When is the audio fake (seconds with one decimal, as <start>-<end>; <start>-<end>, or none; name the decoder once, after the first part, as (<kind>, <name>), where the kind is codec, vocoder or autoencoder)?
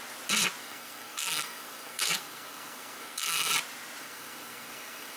0.6-3.5 (codec, SNAC); 4.0-5.2